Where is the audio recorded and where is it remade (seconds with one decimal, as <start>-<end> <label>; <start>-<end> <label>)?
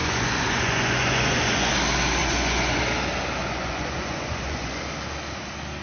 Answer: 0.0-1.7 remade; 1.7-2.2 recorded; 2.2-2.8 remade; 2.8-3.4 recorded; 3.4-4.8 remade; 4.8-5.8 recorded